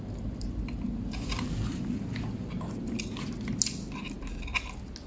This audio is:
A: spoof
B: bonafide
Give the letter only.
B